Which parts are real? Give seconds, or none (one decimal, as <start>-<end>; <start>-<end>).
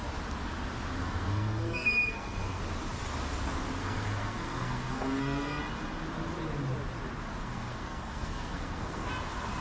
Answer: 0.0-1.0; 2.6-3.8; 5.6-7.4; 9.1-9.6